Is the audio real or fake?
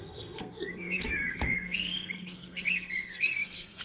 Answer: fake